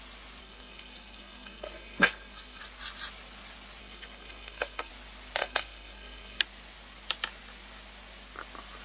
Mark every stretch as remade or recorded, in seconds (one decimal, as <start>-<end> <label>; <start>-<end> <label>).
0.0-0.4 recorded; 0.4-2.6 remade; 2.6-3.8 recorded; 3.8-4.9 remade; 4.9-5.4 recorded; 5.4-6.4 remade; 6.4-8.8 recorded